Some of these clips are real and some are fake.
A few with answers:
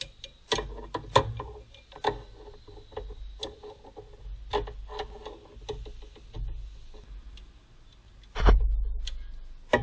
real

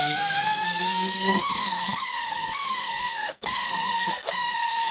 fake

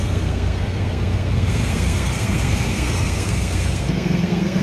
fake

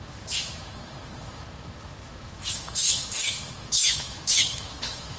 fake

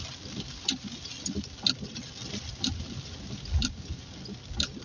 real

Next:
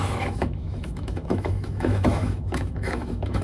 fake